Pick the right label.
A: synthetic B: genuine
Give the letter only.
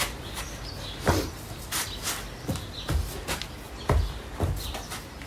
B